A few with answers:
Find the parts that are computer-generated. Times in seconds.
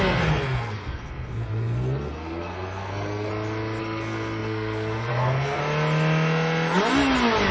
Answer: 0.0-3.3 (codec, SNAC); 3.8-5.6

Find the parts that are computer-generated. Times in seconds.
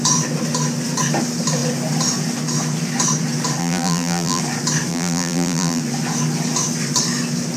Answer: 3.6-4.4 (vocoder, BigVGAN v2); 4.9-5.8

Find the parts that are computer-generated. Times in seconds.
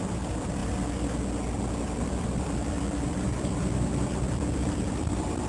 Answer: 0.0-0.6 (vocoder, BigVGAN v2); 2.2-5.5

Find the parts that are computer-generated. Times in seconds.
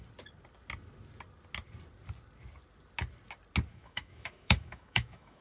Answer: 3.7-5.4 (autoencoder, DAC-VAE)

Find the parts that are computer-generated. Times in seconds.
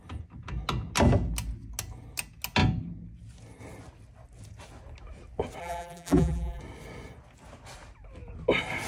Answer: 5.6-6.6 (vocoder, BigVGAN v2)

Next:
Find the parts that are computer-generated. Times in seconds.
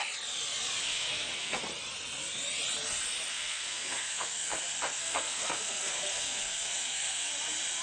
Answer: 0.8-1.6 (codec, SNAC); 3.3-4.6; 5.0-7.3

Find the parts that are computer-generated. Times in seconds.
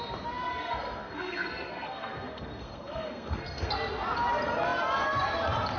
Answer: 0.5-3.7 (codec, SNAC)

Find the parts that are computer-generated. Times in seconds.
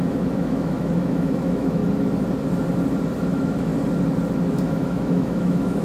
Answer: 0.0-1.8 (autoencoder, DAC-VAE); 3.2-3.7; 4.5-5.8